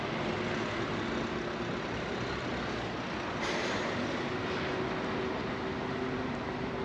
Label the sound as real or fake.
real